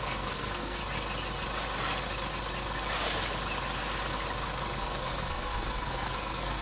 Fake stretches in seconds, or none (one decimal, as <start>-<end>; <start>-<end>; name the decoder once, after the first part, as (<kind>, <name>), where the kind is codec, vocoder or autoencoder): 0.0-0.8 (codec, SNAC); 4.8-6.6